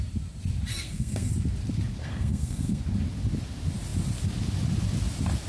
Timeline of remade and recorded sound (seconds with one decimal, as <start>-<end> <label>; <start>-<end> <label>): 0.0-0.7 recorded; 0.7-1.3 remade; 1.3-2.0 recorded; 2.0-2.8 remade; 2.8-5.5 recorded